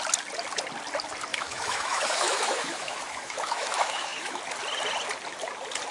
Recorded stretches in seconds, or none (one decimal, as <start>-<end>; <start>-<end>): 0.0-1.3; 4.4-5.9